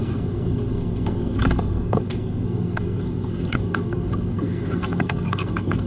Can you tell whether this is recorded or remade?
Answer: remade